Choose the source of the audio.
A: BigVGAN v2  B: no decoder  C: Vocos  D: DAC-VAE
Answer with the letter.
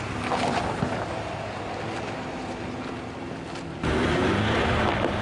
B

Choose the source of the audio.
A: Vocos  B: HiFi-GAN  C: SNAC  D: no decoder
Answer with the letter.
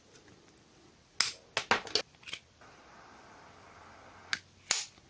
D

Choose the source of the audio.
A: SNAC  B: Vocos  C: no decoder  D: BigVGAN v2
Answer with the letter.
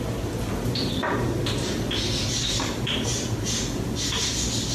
C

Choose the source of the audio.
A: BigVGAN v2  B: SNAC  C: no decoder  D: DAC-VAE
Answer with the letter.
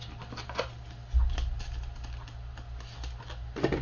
C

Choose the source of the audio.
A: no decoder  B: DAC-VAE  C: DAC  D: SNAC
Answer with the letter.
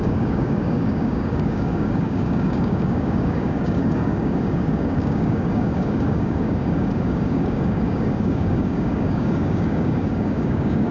C